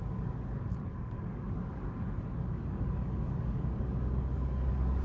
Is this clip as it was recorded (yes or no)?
no